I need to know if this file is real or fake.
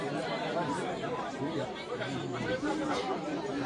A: fake